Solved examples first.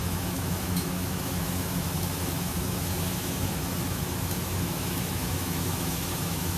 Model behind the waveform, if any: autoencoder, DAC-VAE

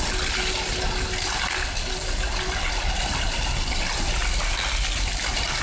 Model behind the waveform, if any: none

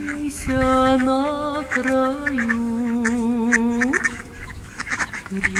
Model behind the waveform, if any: autoencoder, DAC-VAE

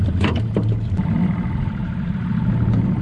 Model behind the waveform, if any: none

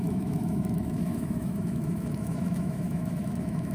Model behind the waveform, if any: autoencoder, DAC-VAE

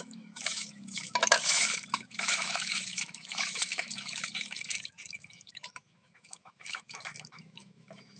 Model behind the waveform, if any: autoencoder, DAC-VAE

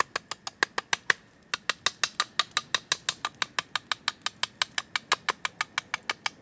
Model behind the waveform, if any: none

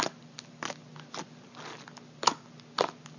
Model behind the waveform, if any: none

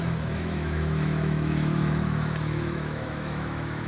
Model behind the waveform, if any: autoencoder, DAC-VAE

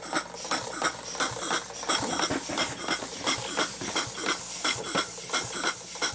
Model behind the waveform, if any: none